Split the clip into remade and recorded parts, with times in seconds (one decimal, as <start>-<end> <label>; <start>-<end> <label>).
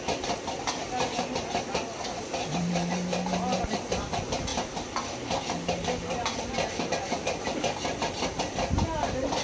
0.0-9.4 recorded